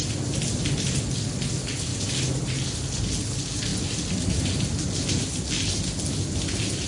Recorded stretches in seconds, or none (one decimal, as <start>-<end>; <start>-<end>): 0.0-6.9